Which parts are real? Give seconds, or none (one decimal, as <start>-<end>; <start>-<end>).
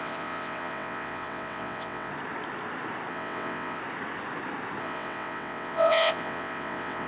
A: 2.1-3.1; 3.8-4.8